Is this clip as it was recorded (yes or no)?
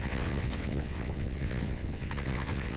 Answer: no